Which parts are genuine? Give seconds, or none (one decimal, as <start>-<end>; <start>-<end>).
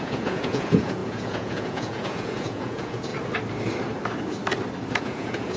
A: 3.1-5.0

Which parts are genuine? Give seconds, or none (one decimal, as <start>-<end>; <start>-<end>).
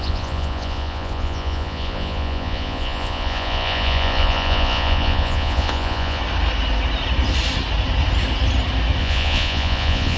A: 6.2-9.0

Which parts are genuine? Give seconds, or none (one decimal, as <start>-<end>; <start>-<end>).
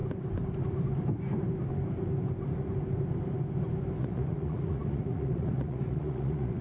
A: 0.0-4.0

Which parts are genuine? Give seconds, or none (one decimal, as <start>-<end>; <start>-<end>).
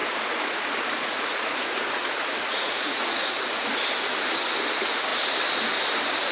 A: 3.7-6.3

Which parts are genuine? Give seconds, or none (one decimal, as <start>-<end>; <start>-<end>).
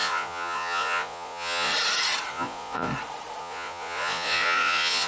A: 1.7-2.3; 2.9-3.4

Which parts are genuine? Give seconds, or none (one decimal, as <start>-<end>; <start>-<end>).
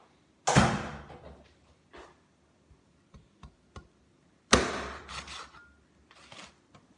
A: 0.0-7.0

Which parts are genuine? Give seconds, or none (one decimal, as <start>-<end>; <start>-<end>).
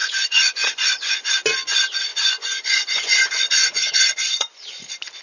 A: 1.3-2.1; 4.7-5.2